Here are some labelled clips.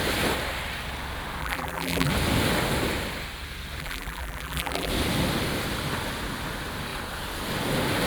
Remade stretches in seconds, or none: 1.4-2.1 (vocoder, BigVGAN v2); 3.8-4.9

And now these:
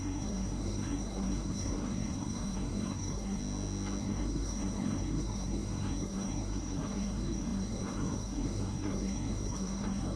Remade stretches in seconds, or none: 0.0-3.4 (codec, SNAC); 4.0-10.2

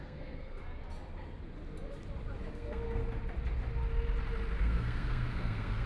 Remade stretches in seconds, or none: 0.0-0.6 (codec, SNAC); 2.5-3.0; 4.6-5.9

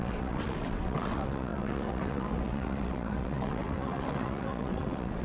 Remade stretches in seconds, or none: 0.0-5.2 (vocoder, WaveNeXt)